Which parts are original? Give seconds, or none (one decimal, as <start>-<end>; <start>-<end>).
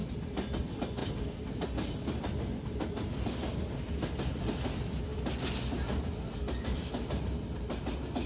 0.0-8.3